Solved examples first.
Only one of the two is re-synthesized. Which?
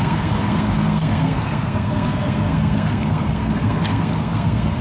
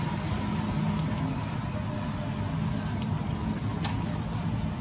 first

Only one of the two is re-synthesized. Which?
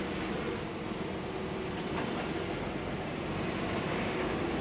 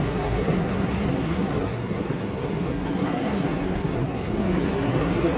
second